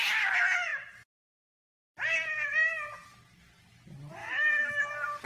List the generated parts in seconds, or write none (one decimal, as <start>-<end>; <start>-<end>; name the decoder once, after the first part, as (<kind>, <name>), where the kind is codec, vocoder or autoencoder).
4.2-4.8 (autoencoder, DAC-VAE)